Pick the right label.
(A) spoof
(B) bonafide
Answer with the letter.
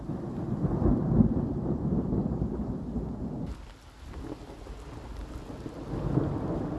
B